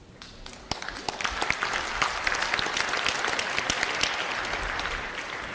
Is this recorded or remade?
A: recorded